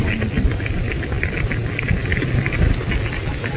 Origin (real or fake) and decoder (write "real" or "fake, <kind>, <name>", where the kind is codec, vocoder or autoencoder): real